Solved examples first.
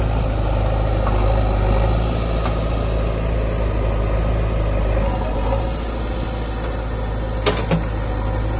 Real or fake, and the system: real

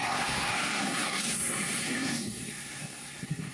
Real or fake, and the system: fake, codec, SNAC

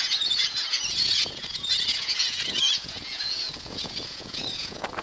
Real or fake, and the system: fake, vocoder, Vocos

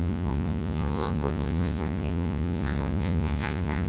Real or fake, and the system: fake, vocoder, Vocos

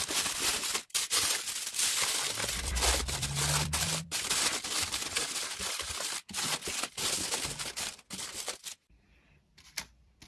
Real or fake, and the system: fake, vocoder, BigVGAN v2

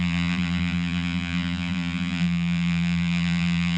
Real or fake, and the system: fake, vocoder, BigVGAN v2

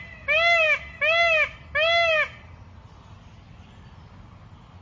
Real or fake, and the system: real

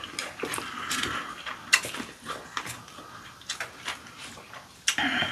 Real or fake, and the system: real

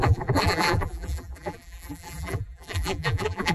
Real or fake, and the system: fake, vocoder, BigVGAN v2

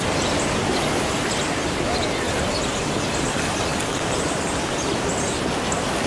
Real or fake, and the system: real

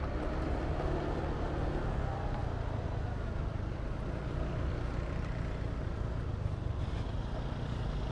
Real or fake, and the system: real